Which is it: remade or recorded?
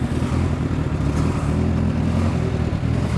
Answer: recorded